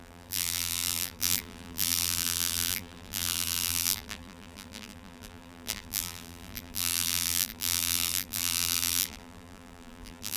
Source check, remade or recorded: remade